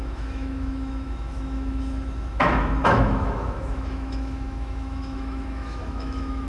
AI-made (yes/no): yes